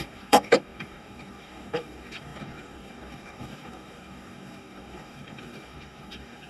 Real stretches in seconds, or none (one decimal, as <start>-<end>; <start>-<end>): none